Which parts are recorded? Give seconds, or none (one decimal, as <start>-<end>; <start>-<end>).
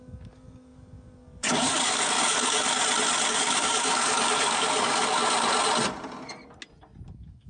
2.8-3.3; 5.2-7.1